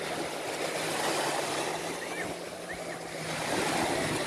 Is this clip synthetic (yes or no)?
no